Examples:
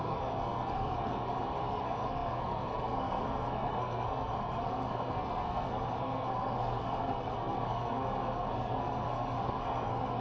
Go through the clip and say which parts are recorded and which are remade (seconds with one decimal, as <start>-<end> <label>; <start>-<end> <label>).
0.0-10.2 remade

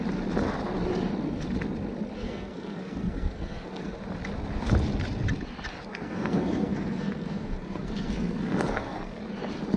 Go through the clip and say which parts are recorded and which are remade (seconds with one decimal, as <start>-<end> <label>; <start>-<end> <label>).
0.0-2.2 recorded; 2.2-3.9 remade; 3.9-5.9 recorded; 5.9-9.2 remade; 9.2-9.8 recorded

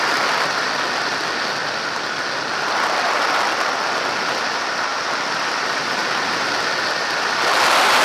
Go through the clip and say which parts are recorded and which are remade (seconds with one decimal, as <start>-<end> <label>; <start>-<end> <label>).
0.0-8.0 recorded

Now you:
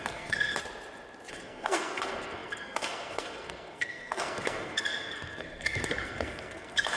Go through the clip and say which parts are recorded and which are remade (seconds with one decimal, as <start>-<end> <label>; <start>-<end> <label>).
0.0-0.6 remade; 0.6-1.3 recorded; 1.3-7.0 remade